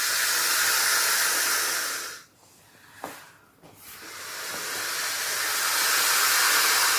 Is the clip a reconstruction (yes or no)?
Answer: no